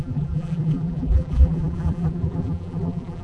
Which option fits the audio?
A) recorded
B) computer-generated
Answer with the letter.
B